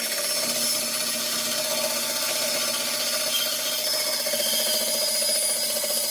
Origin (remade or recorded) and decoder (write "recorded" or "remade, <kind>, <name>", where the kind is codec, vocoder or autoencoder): recorded